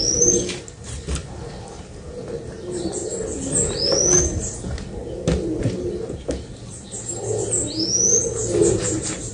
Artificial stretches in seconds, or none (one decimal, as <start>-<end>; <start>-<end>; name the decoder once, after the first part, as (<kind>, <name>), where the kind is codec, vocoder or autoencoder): none